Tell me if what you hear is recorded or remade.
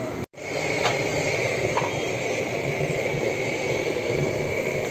remade